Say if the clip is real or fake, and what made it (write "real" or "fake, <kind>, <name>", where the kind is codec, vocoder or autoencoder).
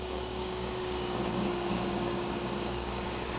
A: fake, codec, DAC